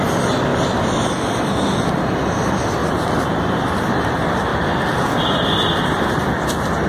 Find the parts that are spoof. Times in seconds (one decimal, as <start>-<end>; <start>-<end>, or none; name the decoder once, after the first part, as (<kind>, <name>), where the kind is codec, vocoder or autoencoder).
0.5-1.5 (vocoder, BigVGAN v2); 2.8-3.8; 4.5-5.8